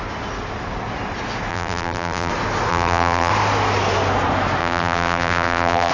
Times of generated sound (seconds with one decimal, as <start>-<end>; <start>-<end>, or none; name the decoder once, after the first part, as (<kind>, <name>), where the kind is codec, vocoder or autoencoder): 1.5-2.3 (vocoder, BigVGAN v2); 2.7-3.3; 4.6-5.9